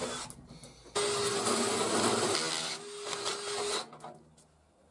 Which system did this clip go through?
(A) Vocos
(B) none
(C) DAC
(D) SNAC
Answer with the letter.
B